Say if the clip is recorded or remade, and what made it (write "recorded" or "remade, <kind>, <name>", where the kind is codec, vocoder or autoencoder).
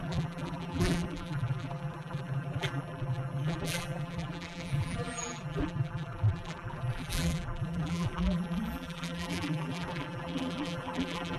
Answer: remade, vocoder, BigVGAN v2